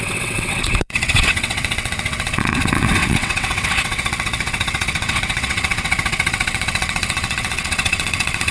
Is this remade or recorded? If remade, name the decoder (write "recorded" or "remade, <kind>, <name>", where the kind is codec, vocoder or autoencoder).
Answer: remade, vocoder, WaveNeXt